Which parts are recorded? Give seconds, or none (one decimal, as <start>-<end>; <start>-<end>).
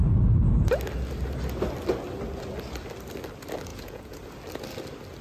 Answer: 0.0-3.7; 4.2-5.2